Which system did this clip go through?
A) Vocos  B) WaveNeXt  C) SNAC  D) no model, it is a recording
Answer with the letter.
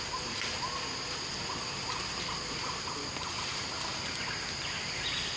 D